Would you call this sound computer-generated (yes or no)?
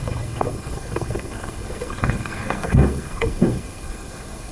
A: yes